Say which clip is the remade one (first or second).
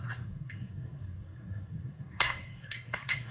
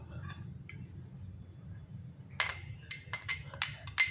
first